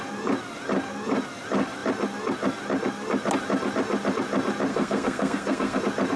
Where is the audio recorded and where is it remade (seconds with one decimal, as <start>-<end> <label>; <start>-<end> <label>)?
0.0-4.7 recorded; 4.7-5.8 remade; 5.8-6.2 recorded